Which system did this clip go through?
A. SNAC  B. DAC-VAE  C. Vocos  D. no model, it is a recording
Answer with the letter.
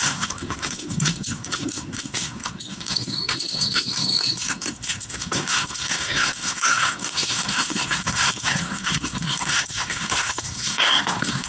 A